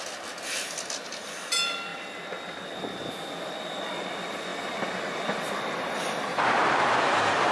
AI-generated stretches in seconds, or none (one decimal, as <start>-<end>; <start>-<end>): none